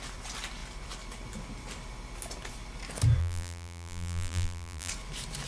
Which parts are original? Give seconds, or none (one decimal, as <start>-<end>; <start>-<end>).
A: 0.0-3.2; 4.9-5.5

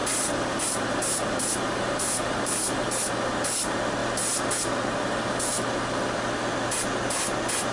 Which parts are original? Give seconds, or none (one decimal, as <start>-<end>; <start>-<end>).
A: 3.1-7.7

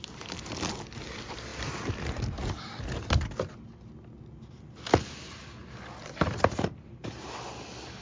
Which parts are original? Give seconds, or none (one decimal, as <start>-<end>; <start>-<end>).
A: 0.0-5.6; 6.4-8.0

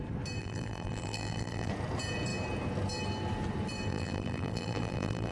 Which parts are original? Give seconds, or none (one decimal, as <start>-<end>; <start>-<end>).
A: 0.0-0.4; 1.7-3.9

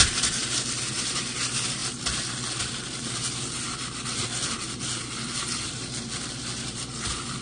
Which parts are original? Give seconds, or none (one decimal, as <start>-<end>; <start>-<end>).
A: 0.0-7.4